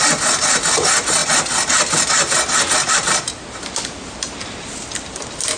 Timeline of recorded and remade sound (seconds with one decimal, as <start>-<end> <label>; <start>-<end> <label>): 0.0-5.6 recorded